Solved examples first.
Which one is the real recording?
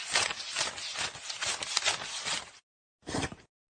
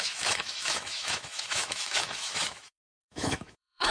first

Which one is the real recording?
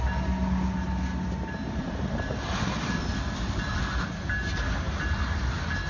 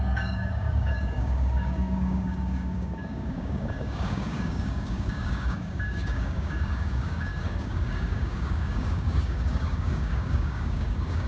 first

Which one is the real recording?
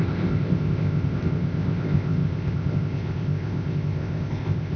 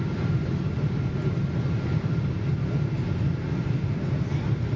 second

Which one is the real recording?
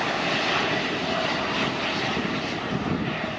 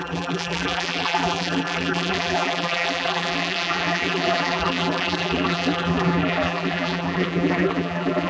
first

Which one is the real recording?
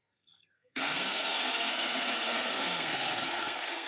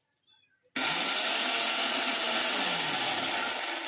second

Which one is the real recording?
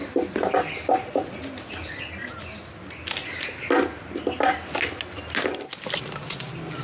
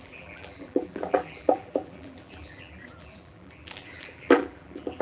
first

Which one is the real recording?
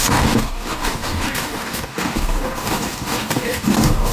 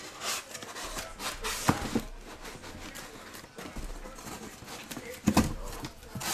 second